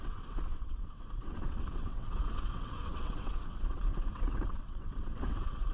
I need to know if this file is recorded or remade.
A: remade